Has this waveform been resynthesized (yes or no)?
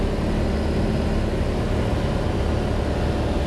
no